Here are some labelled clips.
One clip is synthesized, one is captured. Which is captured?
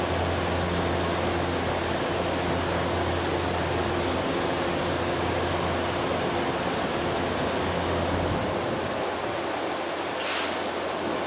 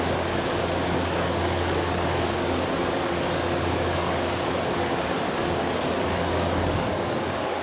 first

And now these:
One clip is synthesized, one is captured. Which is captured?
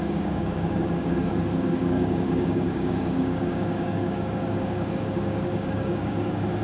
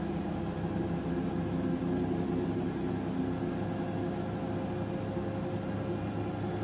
second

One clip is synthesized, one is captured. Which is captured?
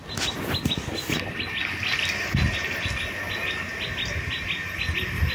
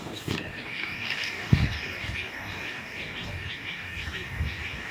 first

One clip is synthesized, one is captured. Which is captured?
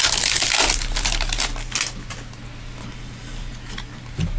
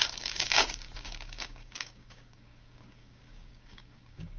first